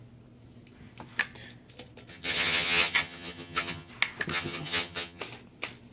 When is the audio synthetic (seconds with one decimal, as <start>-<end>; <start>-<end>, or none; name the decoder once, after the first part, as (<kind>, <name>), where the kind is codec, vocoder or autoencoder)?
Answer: 2.1-3.9 (vocoder, HiFi-GAN); 4.3-5.2